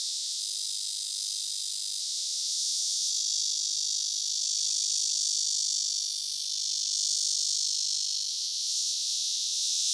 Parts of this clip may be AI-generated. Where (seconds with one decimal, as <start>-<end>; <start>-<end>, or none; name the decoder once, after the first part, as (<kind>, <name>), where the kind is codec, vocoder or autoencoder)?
0.0-0.4 (vocoder, Vocos); 2.0-3.1; 8.3-9.9

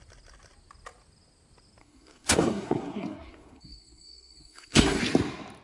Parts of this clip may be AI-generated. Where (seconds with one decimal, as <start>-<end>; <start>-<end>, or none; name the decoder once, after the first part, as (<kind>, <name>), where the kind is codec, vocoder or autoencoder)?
1.8-5.0 (codec, SNAC)

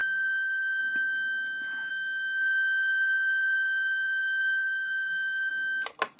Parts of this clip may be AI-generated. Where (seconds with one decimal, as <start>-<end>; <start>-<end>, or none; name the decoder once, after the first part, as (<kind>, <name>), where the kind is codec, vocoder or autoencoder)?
0.0-0.8 (codec, SNAC); 1.9-5.5

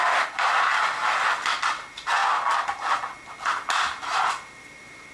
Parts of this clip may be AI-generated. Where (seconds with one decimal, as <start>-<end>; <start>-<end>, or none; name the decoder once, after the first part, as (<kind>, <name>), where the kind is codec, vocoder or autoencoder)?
none

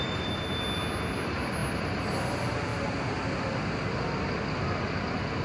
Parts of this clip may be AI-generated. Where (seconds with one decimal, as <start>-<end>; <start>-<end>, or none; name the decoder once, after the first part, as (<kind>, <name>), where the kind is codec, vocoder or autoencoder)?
none

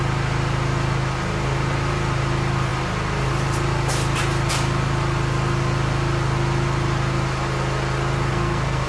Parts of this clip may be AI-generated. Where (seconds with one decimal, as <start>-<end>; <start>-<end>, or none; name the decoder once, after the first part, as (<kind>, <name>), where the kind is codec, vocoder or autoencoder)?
8.3-8.9 (codec, SNAC)

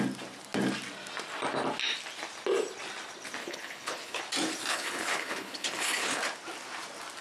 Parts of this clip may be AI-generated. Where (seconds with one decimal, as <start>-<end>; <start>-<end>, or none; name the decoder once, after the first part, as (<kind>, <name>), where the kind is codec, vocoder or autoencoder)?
3.4-4.2 (codec, HILCodec); 4.7-6.2